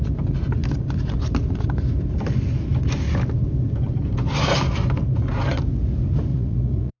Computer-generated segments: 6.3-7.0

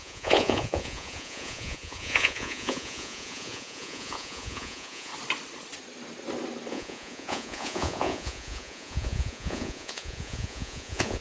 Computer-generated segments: 0.0-5.1; 6.7-11.2

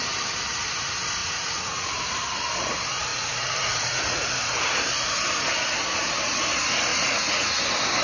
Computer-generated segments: 1.2-1.9; 3.1-4.9; 6.9-7.6

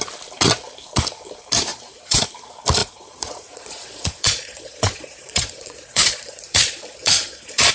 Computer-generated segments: 1.7-2.2; 2.8-7.7